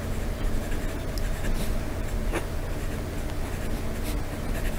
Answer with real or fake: real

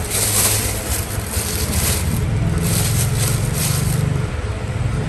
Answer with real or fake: fake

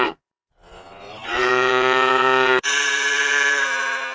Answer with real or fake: fake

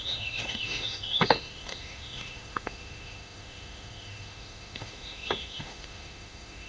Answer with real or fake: fake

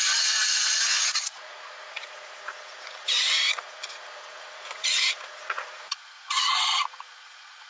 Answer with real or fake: fake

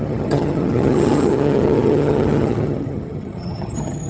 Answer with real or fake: fake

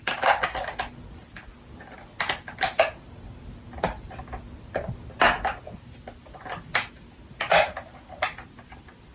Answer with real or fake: real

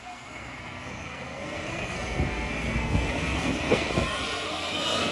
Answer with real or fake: fake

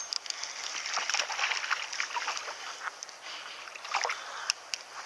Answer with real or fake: real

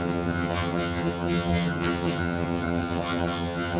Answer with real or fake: fake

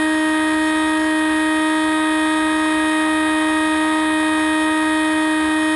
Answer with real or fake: real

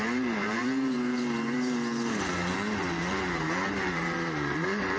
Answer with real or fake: fake